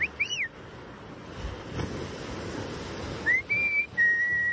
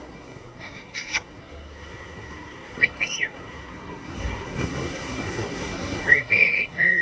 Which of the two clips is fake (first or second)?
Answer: second